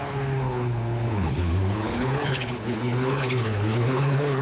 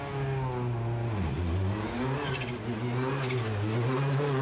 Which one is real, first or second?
second